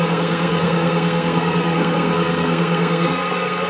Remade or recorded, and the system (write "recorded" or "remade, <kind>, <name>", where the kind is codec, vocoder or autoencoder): remade, codec, SNAC